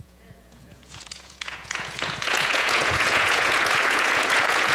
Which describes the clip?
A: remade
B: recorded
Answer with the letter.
A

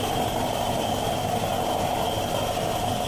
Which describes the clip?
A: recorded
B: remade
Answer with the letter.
A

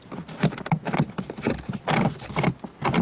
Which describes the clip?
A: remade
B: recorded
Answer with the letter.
B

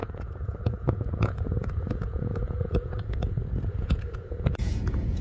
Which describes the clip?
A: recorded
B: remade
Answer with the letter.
B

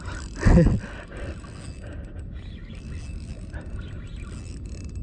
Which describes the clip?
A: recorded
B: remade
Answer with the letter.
A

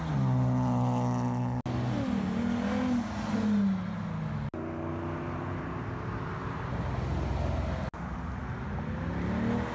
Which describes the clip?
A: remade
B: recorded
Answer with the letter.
B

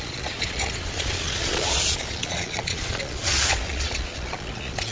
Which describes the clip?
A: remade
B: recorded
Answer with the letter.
A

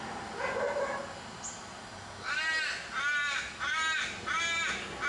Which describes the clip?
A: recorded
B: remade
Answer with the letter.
A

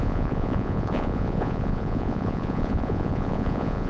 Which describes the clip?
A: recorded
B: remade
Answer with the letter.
B